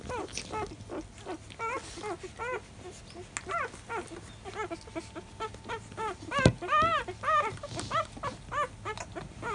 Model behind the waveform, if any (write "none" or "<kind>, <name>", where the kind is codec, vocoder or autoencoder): none